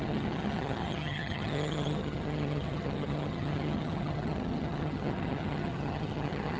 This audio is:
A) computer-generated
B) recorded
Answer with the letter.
A